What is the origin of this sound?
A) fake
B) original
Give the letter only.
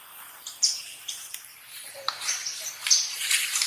A